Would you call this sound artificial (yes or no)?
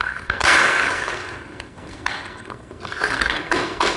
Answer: yes